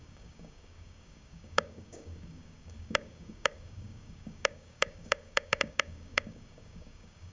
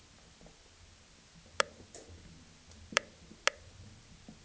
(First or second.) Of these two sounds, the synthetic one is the first